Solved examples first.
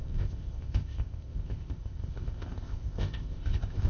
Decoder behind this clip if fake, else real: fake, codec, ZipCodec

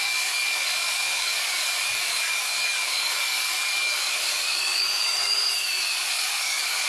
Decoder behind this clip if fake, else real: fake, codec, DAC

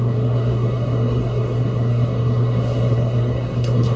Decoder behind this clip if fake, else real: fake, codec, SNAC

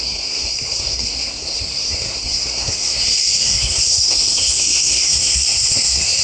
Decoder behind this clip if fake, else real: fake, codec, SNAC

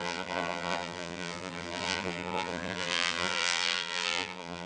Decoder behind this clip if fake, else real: fake, vocoder, BigVGAN v2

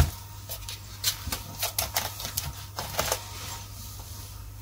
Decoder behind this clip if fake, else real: real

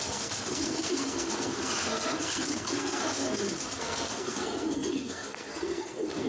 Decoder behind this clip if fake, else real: fake, codec, SNAC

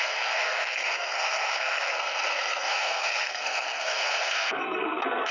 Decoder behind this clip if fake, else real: fake, codec, SNAC